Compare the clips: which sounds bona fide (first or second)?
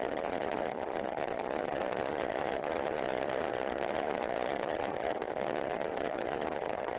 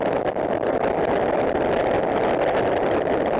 second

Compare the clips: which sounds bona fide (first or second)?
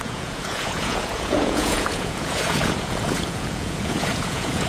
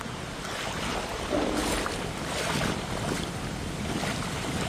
second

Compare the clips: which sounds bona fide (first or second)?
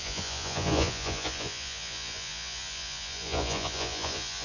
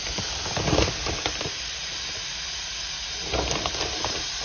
second